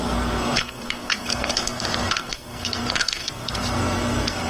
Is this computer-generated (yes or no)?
yes